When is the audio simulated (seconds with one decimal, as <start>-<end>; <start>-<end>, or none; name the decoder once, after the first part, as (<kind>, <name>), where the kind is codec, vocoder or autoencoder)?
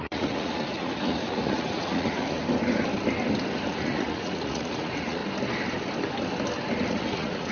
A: 0.0-2.4 (vocoder, Vocos); 3.7-5.2; 6.9-7.5